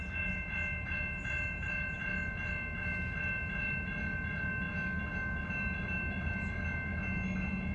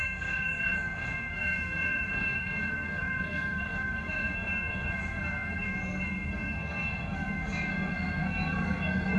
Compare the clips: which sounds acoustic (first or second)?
first